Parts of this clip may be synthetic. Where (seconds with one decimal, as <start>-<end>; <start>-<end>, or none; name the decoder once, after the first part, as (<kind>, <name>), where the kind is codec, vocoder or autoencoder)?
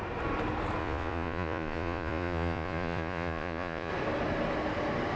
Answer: 0.8-3.9 (vocoder, Vocos)